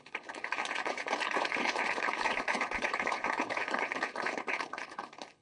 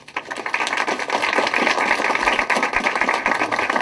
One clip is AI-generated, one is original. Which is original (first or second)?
second